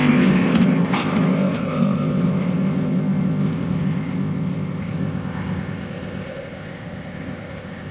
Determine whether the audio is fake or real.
fake